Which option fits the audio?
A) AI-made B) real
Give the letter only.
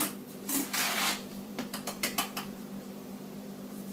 A